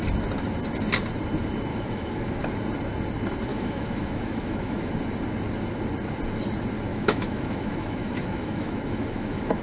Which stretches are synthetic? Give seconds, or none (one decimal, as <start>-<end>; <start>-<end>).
1.7-2.3; 3.5-4.9; 6.9-9.6